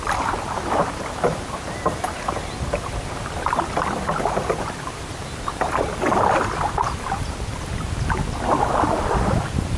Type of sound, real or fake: real